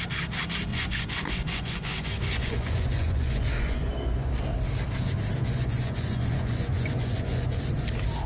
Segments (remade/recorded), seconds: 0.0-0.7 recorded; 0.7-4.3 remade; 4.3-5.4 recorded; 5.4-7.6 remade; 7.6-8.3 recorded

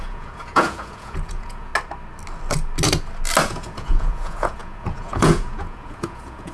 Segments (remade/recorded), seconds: 0.0-1.7 remade; 1.7-3.4 recorded; 3.4-6.5 remade